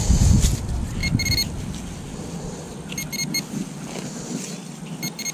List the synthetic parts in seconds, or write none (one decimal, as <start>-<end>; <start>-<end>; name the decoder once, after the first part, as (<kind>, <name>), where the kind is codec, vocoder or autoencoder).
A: none